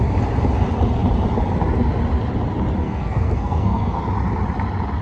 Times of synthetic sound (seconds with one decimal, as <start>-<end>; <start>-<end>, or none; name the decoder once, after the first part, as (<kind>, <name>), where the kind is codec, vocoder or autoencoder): 2.8-4.0 (codec, SNAC)